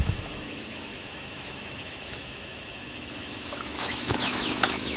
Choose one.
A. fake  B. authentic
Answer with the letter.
A